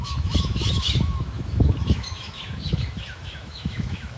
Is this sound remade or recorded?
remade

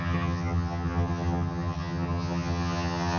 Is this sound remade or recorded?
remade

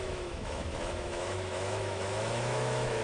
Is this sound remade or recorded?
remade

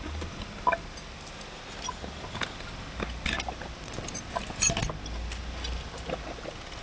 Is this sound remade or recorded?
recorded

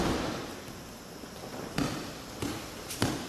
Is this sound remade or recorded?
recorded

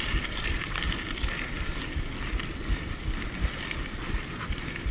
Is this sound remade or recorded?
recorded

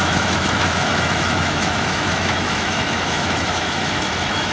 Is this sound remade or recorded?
remade